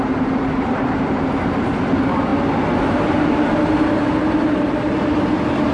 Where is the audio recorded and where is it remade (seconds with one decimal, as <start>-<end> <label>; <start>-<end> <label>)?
0.0-2.3 remade; 2.3-4.5 recorded; 4.5-5.7 remade